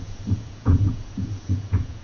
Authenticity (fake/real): fake